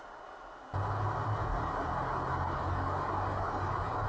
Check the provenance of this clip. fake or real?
real